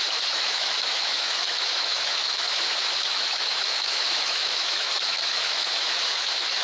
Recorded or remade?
remade